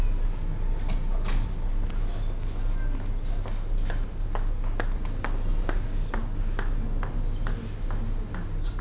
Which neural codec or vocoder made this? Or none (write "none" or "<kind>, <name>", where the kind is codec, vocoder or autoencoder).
none